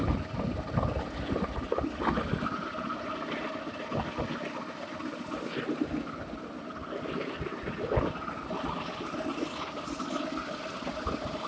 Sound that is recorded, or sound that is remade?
recorded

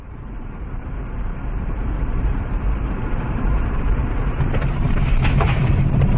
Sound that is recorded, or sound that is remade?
remade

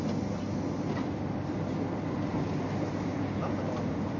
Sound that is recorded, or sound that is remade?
recorded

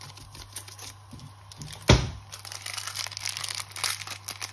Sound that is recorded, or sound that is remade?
recorded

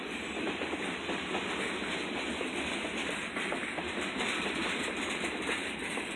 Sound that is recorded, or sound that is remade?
remade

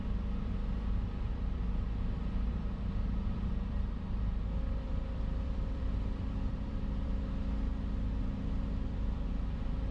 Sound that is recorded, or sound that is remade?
remade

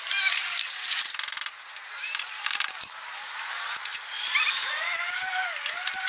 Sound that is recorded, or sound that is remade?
remade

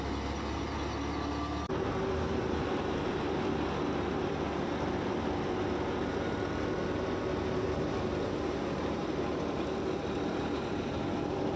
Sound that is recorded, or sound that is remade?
recorded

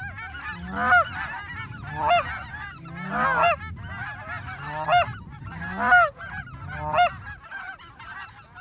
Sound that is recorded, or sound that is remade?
recorded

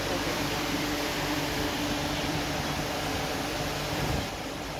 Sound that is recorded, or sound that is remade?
remade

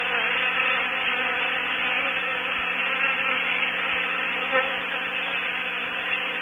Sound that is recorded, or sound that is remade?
recorded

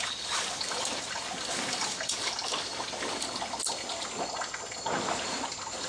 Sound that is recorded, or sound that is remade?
recorded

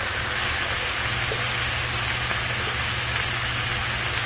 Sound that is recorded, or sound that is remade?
recorded